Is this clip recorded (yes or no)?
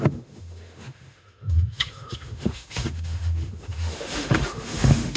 no